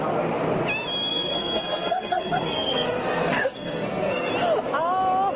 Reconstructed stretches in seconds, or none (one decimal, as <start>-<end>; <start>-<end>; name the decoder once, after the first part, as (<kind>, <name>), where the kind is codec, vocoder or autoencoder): 1.1-4.3 (codec, SNAC)